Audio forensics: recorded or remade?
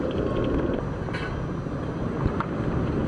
recorded